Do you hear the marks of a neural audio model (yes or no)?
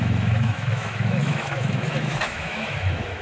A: yes